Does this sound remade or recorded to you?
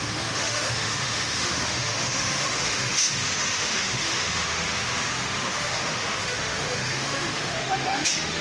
remade